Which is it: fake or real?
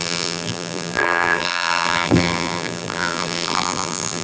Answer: fake